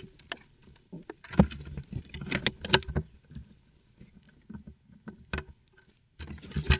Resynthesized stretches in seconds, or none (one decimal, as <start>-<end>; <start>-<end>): none